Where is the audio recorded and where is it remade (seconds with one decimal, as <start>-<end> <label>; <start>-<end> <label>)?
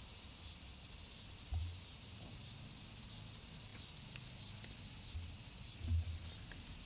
0.0-1.6 recorded; 1.6-2.5 remade; 2.5-6.9 recorded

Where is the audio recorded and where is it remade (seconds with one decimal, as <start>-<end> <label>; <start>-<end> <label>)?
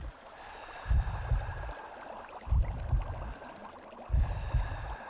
0.0-5.1 remade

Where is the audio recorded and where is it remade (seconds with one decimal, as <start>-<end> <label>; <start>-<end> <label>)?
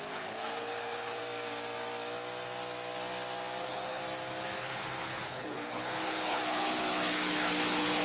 0.0-1.2 remade; 1.2-3.6 recorded; 3.6-4.0 remade; 4.0-4.6 recorded; 4.6-8.0 remade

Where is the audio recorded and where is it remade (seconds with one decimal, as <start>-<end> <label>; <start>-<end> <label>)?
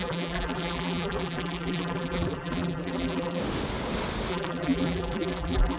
0.0-3.4 remade; 3.4-4.3 recorded; 4.3-5.8 remade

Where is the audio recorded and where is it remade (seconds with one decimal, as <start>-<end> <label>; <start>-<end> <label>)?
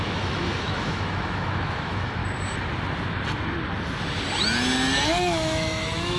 0.0-2.2 remade; 2.2-5.2 recorded; 5.2-6.2 remade